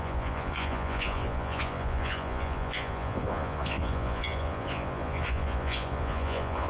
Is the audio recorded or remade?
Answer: remade